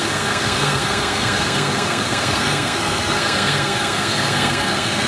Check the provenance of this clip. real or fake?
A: fake